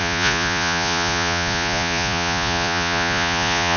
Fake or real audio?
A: fake